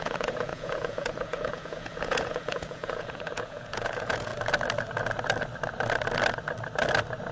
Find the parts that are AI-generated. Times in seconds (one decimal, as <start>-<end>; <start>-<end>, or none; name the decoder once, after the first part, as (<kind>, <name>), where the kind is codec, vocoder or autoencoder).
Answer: 0.0-4.3 (vocoder, Vocos)